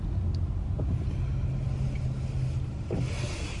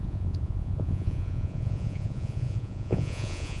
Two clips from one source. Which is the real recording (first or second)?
first